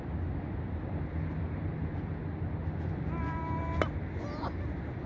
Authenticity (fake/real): real